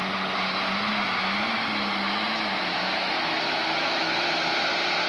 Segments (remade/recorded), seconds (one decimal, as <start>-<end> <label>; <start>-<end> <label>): 0.0-2.8 recorded; 2.8-4.1 remade; 4.1-5.1 recorded